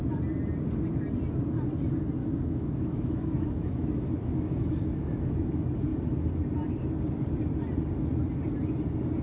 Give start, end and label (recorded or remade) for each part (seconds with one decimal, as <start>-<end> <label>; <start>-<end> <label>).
0.0-2.2 recorded; 2.2-5.5 remade; 5.5-9.2 recorded